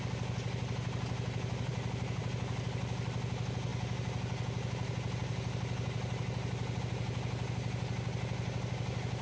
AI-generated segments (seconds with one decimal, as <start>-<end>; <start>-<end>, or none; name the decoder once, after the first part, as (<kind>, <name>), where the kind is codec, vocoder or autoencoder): none